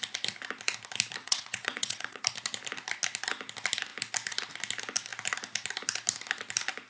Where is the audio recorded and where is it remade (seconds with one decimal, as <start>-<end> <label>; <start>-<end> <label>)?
0.0-1.2 recorded; 1.2-2.2 remade; 2.2-6.9 recorded